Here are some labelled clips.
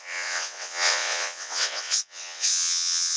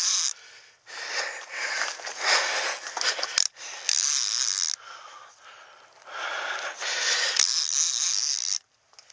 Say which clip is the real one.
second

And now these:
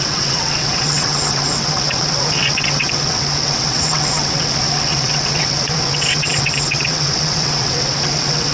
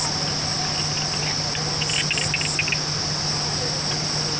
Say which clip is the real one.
second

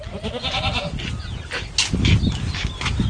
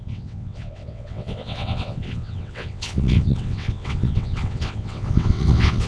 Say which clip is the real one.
first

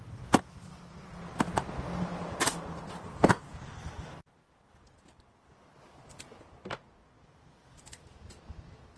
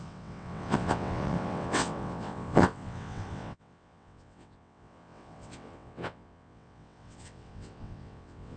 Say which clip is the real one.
first